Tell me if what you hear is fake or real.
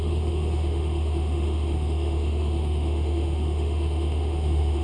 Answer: fake